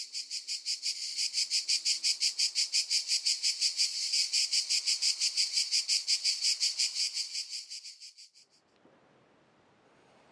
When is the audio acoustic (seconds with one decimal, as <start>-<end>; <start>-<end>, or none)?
6.0-9.4